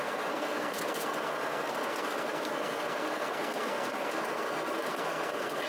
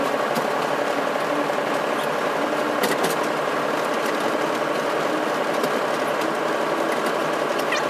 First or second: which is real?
second